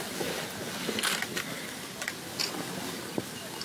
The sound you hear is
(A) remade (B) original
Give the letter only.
B